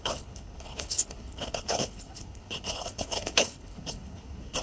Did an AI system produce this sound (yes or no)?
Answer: yes